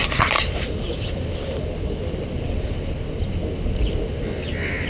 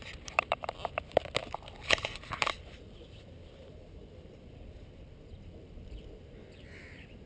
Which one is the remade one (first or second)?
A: second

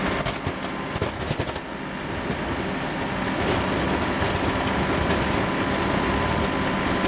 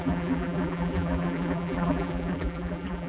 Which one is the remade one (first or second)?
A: second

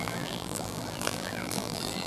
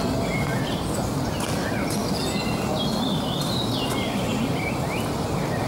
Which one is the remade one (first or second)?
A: first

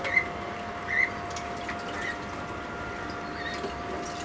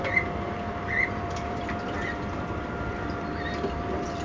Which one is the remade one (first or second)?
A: second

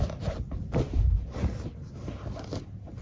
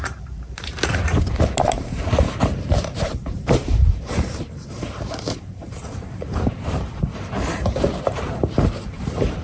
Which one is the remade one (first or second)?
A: second